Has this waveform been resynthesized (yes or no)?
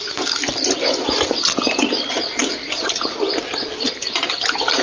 no